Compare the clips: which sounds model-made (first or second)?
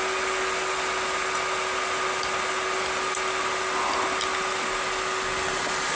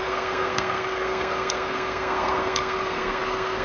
second